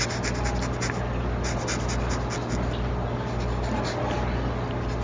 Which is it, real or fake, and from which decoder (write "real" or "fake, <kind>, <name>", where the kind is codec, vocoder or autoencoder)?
real